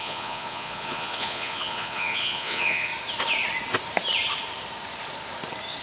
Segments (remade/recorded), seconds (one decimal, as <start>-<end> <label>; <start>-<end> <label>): 0.0-2.9 remade; 2.9-5.8 recorded